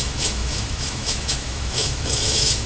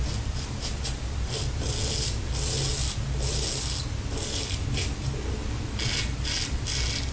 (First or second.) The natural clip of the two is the second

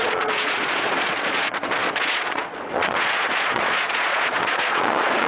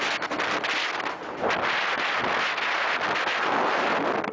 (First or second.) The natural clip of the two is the second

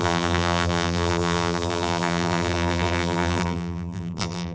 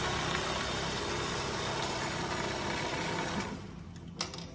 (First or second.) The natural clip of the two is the second